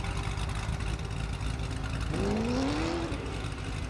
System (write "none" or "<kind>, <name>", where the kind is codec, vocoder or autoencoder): none